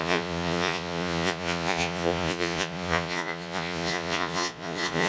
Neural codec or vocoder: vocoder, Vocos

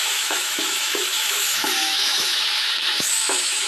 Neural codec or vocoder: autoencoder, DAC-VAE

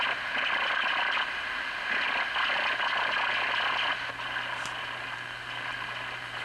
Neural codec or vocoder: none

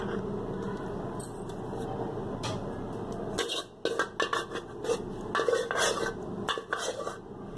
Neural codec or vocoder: none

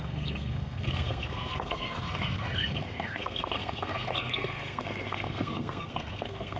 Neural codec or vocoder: codec, SNAC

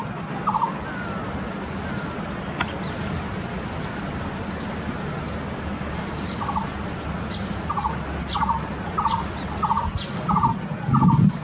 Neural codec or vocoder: none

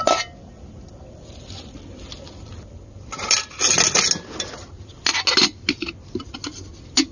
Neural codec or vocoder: none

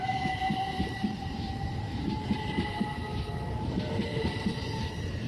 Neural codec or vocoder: vocoder, BigVGAN v2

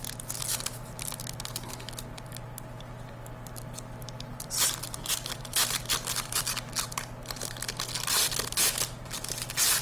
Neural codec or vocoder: none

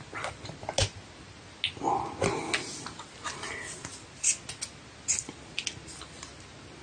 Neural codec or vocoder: none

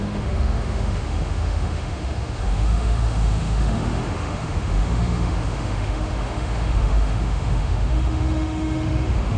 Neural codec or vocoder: autoencoder, DAC-VAE